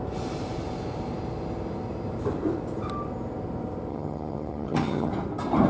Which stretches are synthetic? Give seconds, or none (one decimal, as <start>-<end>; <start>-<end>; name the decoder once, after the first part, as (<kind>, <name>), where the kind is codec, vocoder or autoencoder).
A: 3.9-5.1 (vocoder, HiFi-GAN)